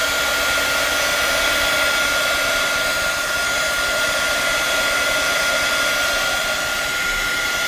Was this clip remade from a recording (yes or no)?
no